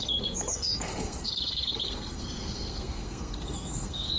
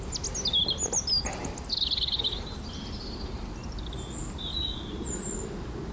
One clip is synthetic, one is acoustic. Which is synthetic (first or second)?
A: first